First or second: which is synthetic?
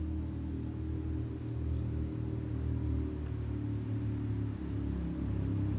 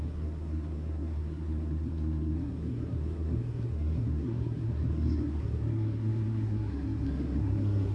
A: second